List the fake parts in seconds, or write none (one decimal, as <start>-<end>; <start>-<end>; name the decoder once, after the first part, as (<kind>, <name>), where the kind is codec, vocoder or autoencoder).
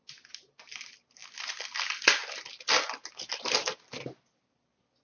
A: 0.0-1.2 (vocoder, BigVGAN v2); 4.2-5.0